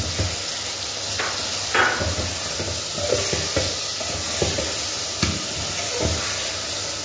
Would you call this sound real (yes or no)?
yes